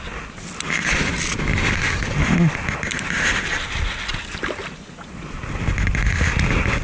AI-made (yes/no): no